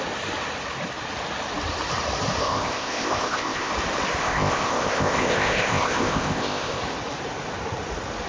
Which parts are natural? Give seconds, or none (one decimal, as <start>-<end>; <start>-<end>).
0.0-2.4; 3.7-4.2; 6.8-8.3